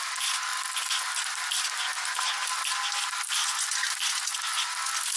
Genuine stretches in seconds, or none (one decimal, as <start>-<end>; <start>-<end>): 0.0-5.2